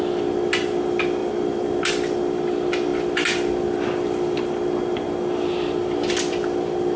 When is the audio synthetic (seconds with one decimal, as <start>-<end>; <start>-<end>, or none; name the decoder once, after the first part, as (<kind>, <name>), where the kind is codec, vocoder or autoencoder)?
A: 1.2-1.8 (vocoder, BigVGAN v2)